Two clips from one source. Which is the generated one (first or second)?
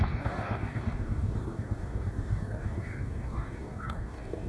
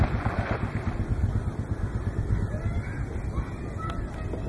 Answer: first